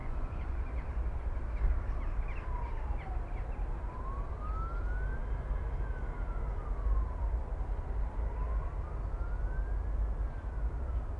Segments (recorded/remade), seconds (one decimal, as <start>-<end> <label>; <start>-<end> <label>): 0.0-0.7 remade; 0.7-11.2 recorded